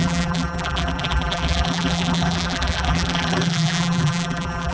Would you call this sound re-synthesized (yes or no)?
yes